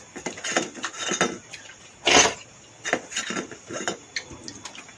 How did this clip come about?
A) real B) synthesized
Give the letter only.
A